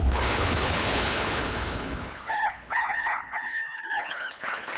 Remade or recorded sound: remade